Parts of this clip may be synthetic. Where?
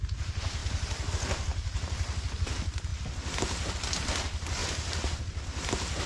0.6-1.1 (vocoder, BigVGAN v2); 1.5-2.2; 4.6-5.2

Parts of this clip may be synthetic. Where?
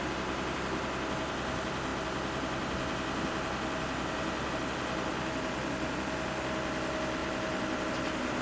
7.2-7.9 (vocoder, BigVGAN v2)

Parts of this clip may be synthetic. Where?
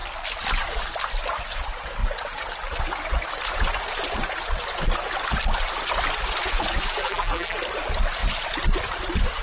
7.0-7.6 (vocoder, BigVGAN v2)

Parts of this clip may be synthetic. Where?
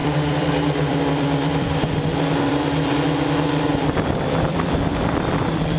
0.0-2.9 (vocoder, BigVGAN v2); 3.7-5.8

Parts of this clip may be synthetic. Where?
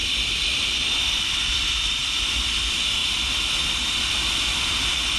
0.0-3.0 (vocoder, BigVGAN v2)